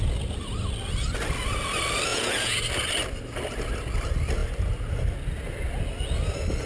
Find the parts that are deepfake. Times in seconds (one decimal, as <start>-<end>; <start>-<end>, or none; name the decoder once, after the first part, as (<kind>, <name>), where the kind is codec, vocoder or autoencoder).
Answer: 2.1-2.6 (vocoder, Vocos)